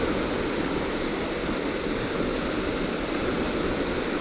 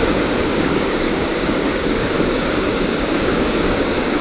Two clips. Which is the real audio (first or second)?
first